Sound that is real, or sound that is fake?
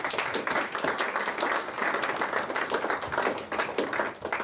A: real